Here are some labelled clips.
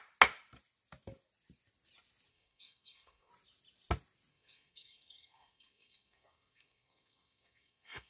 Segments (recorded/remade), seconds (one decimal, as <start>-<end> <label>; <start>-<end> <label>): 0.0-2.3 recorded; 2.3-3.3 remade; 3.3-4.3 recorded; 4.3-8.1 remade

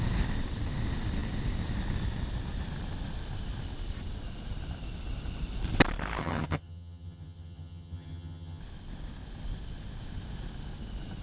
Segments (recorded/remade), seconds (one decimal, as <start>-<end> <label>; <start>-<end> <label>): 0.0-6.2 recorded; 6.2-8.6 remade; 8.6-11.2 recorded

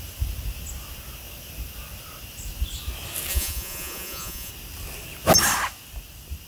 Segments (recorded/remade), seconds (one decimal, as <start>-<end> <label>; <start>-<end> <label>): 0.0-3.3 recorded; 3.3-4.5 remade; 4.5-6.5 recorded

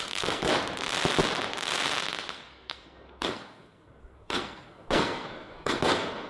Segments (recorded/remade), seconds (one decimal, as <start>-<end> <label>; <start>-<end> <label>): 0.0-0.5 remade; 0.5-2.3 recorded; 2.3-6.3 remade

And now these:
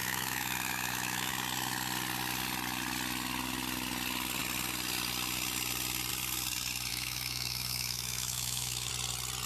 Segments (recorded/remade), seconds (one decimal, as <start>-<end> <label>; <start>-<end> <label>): 0.0-1.3 remade; 1.3-6.9 recorded; 6.9-8.9 remade; 8.9-9.5 recorded